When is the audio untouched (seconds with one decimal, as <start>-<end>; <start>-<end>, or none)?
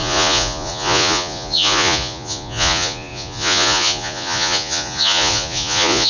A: none